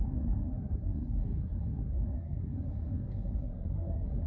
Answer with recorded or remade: remade